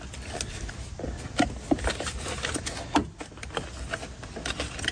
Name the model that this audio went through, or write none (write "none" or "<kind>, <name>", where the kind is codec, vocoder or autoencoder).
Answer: none